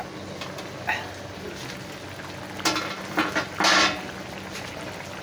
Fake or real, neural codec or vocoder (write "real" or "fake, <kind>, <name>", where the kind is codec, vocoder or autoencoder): real